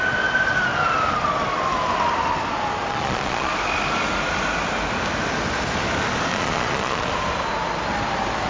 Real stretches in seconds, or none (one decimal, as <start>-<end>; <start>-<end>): 0.0-2.9; 3.5-6.3; 7.1-8.5

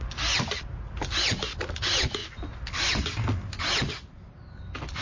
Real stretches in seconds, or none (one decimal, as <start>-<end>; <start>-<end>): 0.0-5.0